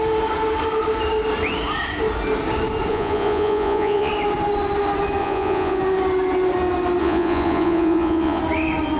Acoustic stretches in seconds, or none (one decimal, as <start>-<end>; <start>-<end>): 0.0-2.9; 4.1-5.2; 5.8-7.0; 8.4-9.0

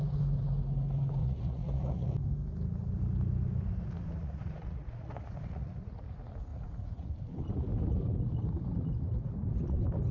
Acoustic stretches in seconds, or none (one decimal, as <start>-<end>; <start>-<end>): 0.0-1.2; 2.1-4.2; 6.0-6.5; 7.1-10.1